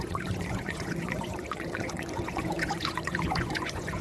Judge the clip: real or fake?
fake